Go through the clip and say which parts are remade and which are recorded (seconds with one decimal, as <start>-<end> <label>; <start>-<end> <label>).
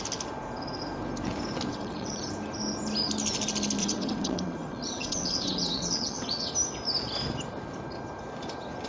0.0-1.7 recorded; 1.7-2.2 remade; 2.2-3.8 recorded; 3.8-6.5 remade; 6.5-8.9 recorded